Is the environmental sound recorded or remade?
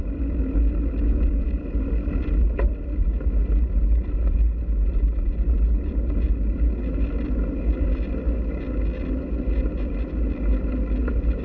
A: recorded